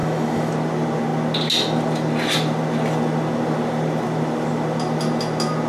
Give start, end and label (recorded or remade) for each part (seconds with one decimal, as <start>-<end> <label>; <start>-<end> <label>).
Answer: 0.0-0.5 remade; 0.5-5.7 recorded